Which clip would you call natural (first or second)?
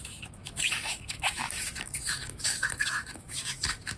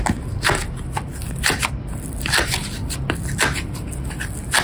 second